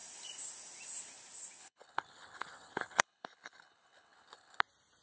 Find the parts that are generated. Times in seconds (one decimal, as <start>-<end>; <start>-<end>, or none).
1.6-4.6